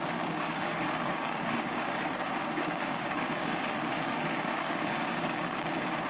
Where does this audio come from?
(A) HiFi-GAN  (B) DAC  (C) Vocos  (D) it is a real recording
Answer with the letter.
B